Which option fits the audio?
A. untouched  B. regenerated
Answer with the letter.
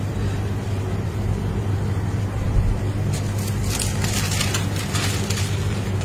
A